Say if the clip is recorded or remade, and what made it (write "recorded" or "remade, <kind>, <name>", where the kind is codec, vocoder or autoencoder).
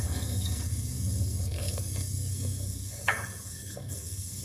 remade, codec, SNAC